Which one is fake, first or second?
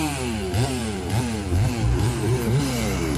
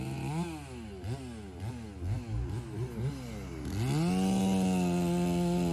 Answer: first